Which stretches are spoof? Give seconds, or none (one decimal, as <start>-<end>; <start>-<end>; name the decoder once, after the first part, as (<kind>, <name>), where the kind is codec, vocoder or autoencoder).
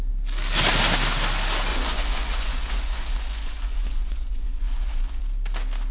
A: 1.7-5.2 (vocoder, Vocos)